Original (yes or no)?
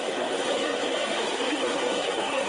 no